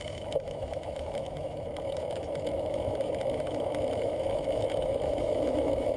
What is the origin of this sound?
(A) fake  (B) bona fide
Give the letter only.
A